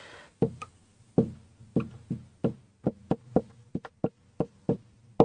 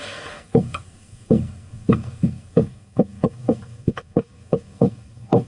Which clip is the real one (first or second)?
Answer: first